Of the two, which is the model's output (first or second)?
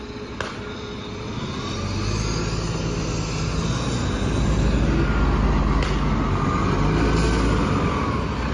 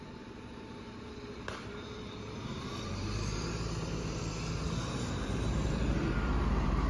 second